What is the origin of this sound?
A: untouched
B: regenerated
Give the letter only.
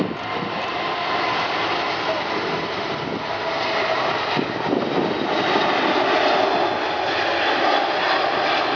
A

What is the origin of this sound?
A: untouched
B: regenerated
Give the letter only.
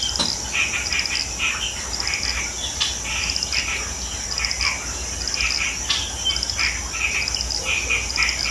A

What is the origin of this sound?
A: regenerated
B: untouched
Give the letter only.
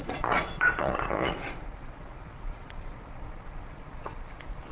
A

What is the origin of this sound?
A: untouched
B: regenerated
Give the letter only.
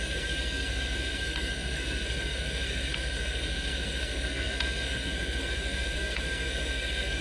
B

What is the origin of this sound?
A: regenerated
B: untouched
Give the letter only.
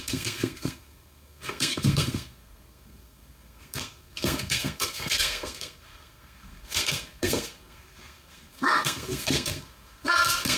A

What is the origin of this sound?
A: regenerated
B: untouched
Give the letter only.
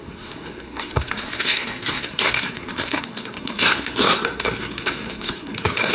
A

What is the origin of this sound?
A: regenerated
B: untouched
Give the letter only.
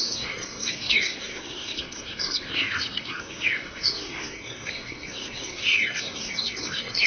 A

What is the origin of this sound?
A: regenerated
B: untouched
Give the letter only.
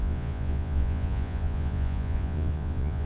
A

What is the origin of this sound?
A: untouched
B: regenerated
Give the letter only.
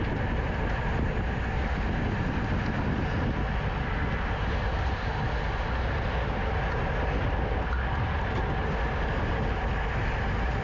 A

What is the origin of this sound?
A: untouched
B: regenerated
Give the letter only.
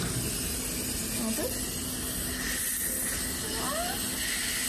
A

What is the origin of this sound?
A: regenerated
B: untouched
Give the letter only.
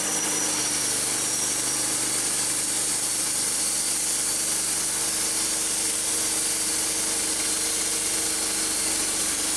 B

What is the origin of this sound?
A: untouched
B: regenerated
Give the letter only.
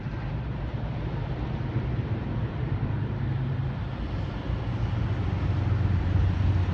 A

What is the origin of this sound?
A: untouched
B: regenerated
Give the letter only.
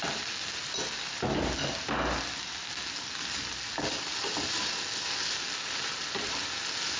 A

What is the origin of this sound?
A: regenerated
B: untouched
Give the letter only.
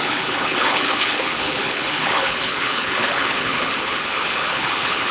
A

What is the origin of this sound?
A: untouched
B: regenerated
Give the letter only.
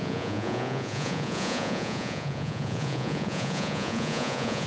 B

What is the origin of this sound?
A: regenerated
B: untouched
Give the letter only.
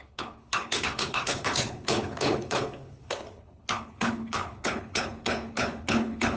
A